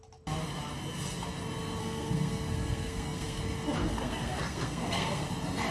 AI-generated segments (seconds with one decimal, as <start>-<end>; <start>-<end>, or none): 1.8-3.4; 3.8-5.3